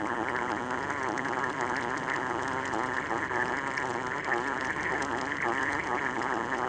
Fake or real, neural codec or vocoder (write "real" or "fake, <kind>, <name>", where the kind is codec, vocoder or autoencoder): real